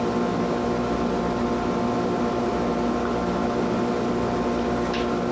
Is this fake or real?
real